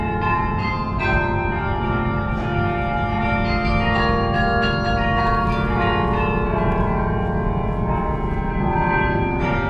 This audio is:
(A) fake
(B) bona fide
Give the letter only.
B